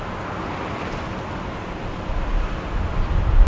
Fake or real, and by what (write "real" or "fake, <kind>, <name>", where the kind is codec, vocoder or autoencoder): real